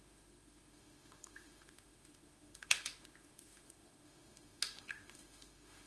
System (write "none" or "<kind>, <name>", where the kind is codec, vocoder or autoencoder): autoencoder, DAC-VAE